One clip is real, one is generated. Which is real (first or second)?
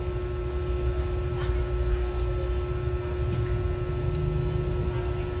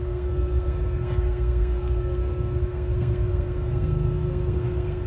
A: first